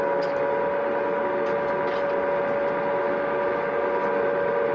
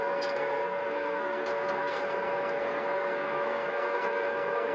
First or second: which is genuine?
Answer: first